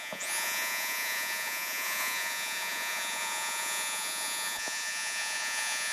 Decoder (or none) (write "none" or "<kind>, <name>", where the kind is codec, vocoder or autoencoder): vocoder, Vocos